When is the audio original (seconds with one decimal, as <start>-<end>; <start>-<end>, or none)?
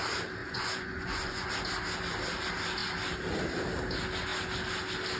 0.0-0.4; 1.5-5.2